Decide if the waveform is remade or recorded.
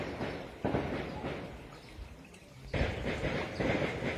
recorded